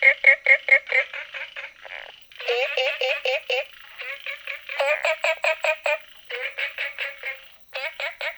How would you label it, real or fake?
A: real